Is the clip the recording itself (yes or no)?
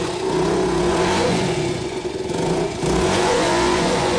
no